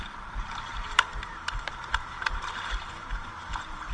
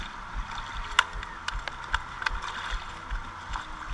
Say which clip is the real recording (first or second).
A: second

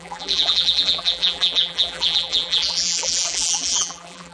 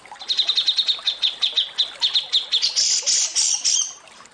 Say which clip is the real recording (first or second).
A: second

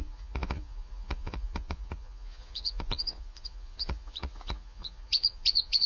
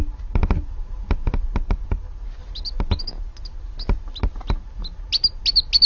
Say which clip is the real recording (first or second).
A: second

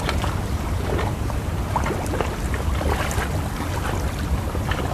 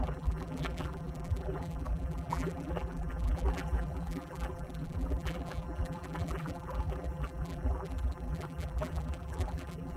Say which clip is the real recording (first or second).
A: first